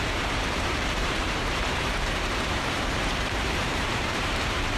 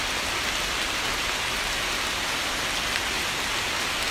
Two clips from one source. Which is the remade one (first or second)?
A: first